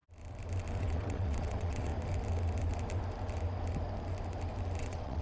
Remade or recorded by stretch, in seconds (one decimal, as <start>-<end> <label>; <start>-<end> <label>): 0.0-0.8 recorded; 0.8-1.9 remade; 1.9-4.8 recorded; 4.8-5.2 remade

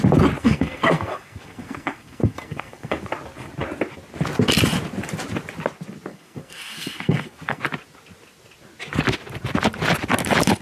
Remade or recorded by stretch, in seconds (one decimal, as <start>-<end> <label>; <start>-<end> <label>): 0.0-0.4 recorded; 0.4-3.0 remade; 3.0-6.1 recorded; 6.1-7.6 remade; 7.6-10.6 recorded

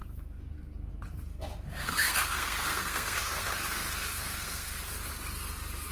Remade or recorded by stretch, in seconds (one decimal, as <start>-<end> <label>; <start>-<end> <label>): 0.0-0.9 remade; 0.9-1.3 recorded; 1.3-4.8 remade; 4.8-5.9 recorded

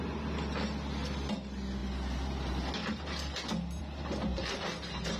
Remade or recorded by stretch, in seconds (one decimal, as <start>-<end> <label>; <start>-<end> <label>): 0.0-4.3 recorded; 4.3-5.2 remade

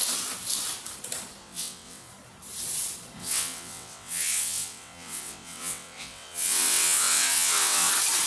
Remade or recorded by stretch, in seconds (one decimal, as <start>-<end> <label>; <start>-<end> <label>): 0.0-1.4 recorded; 1.4-2.1 remade; 2.1-3.2 recorded; 3.2-7.9 remade; 7.9-8.3 recorded

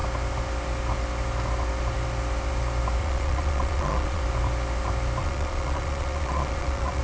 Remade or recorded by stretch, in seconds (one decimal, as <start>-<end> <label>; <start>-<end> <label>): 0.0-3.0 recorded; 3.0-4.2 remade; 4.2-5.2 recorded; 5.2-7.0 remade